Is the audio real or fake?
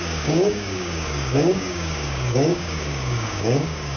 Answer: fake